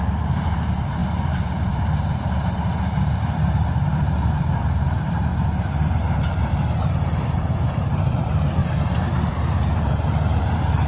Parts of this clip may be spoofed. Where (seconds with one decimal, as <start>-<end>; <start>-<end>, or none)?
0.0-5.3; 6.0-8.6; 9.1-10.9